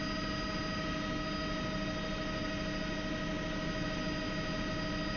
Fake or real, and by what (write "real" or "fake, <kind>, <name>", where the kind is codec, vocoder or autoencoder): real